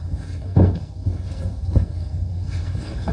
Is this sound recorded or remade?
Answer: remade